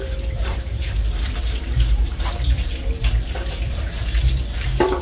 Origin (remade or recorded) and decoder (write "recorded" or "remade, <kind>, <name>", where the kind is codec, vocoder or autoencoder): remade, vocoder, BigVGAN v2